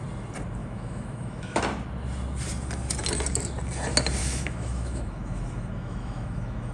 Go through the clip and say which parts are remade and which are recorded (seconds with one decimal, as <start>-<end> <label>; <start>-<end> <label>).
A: 0.0-0.6 recorded; 0.6-1.6 remade; 1.6-4.2 recorded; 4.2-6.7 remade